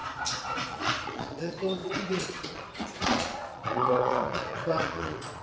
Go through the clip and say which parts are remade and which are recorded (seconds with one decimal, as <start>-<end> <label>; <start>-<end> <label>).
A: 0.0-0.7 recorded; 0.7-5.4 remade